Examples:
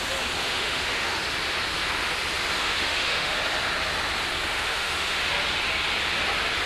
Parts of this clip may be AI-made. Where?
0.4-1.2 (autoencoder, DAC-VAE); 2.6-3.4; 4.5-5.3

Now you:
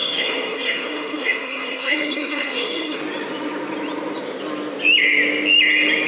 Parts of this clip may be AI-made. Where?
0.0-3.0 (codec, SNAC)